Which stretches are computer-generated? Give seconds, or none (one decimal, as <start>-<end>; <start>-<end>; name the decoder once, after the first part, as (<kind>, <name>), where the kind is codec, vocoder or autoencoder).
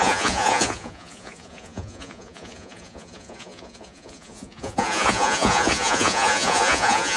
0.0-7.2 (vocoder, Vocos)